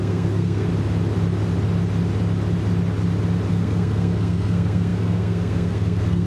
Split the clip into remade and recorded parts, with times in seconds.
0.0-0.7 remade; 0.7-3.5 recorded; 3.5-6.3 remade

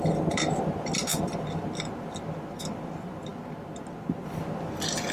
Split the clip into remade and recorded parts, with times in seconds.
0.0-5.1 recorded

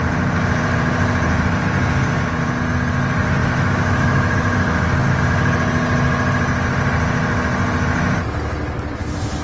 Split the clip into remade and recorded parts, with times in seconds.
0.0-3.4 recorded; 3.4-5.2 remade; 5.2-9.4 recorded

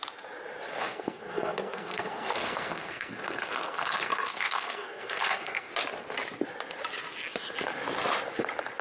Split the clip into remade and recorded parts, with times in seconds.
0.0-0.7 recorded; 0.7-5.7 remade; 5.7-8.8 recorded

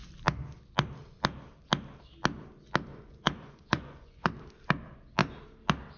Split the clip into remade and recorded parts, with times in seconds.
0.0-2.9 recorded; 2.9-4.3 remade; 4.3-6.0 recorded

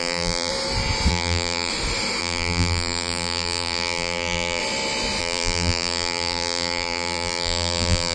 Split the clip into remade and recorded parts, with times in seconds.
0.0-0.5 remade; 0.5-1.1 recorded; 1.1-1.7 remade; 1.7-2.2 recorded; 2.2-4.6 remade; 4.6-5.2 recorded; 5.2-8.1 remade

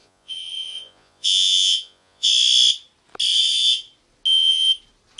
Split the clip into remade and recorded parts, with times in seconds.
0.0-2.3 remade; 2.3-5.2 recorded

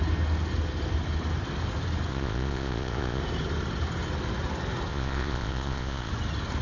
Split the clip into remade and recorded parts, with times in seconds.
0.0-2.1 recorded; 2.1-3.2 remade; 3.2-4.9 recorded; 4.9-6.1 remade; 6.1-6.6 recorded